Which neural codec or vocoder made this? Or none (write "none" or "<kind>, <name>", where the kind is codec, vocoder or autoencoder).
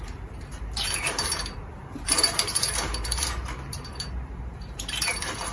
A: vocoder, BigVGAN v2